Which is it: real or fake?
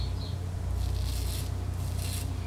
real